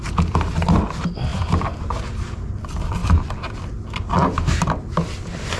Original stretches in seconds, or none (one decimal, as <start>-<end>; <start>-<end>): 0.0-1.3; 1.9-3.0; 3.8-5.6